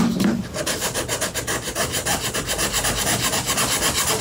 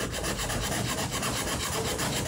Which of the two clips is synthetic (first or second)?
second